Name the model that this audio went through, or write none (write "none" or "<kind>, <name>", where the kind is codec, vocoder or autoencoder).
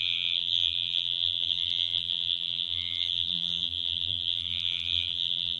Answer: vocoder, BigVGAN v2